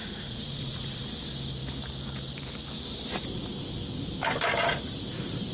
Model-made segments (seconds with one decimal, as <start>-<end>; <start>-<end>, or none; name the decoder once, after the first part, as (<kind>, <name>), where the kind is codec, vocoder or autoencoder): 0.0-1.0 (vocoder, Vocos)